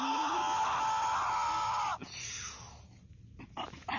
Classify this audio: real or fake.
real